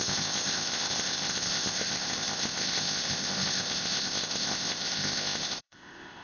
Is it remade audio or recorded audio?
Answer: remade